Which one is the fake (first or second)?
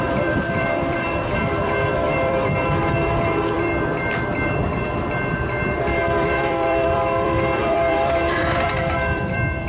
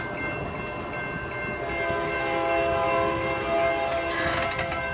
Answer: first